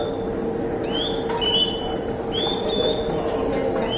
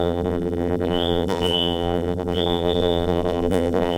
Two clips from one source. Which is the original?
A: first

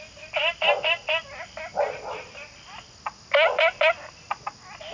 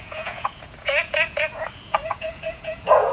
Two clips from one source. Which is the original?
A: first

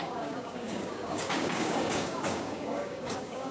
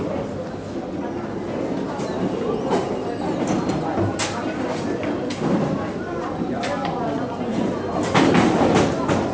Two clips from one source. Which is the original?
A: second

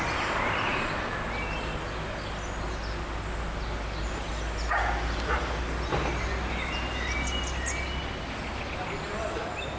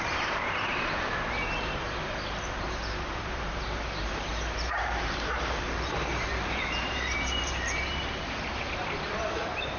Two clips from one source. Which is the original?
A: first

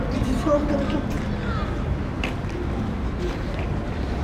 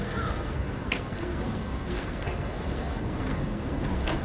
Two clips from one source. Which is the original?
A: first